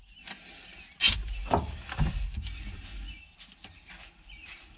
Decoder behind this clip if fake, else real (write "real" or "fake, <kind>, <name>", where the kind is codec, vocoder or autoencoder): real